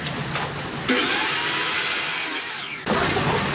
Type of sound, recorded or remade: recorded